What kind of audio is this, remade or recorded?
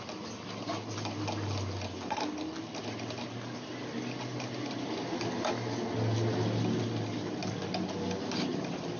recorded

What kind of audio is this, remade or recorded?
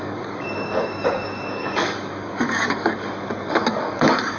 remade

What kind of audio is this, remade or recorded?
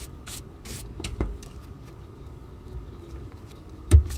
remade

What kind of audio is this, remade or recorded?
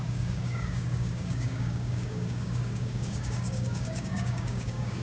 remade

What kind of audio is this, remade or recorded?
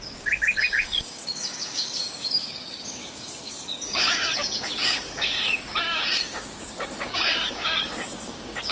remade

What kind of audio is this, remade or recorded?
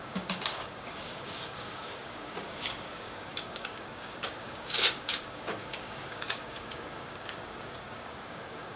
remade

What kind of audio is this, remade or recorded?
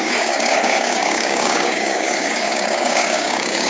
remade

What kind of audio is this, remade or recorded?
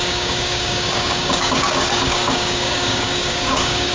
remade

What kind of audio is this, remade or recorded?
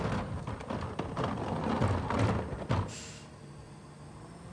recorded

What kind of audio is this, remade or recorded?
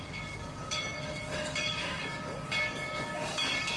remade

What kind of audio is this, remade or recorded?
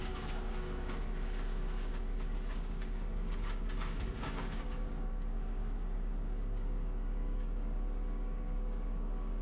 remade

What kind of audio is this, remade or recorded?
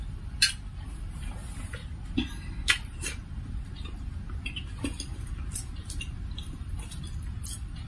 recorded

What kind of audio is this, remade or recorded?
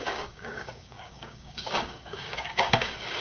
remade